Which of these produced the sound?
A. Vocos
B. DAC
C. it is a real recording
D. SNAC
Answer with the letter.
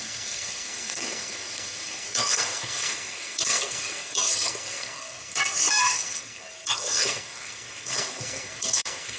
D